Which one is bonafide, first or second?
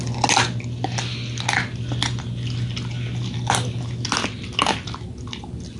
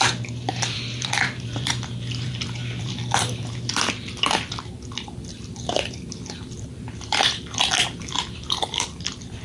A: first